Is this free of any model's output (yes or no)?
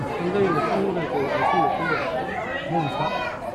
yes